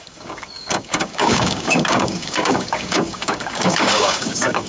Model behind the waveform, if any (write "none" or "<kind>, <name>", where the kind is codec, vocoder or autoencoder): codec, DAC